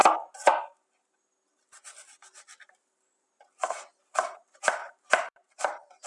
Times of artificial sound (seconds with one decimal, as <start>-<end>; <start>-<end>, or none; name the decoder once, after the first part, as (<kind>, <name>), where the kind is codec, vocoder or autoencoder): 4.8-6.1 (vocoder, BigVGAN v2)